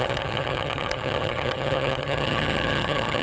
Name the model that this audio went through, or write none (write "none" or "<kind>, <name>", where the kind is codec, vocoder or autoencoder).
vocoder, HiFi-GAN